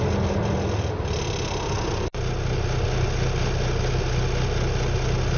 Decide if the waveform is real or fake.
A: real